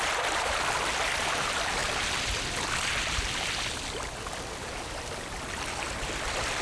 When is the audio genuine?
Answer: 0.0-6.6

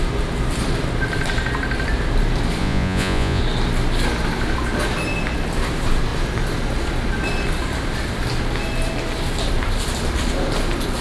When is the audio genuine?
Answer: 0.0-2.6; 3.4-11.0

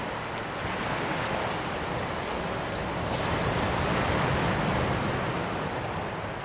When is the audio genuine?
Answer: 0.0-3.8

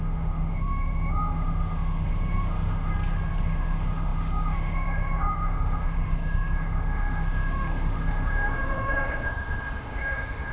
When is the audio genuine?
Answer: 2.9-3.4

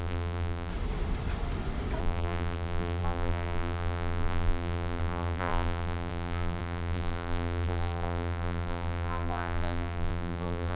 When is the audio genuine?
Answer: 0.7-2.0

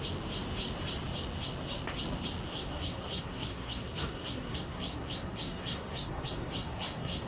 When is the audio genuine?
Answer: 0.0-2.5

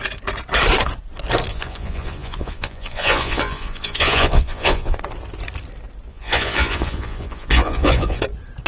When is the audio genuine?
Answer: 0.0-1.5; 5.0-6.1; 8.2-8.7